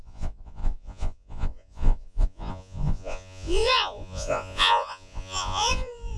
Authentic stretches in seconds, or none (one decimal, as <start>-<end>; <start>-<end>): none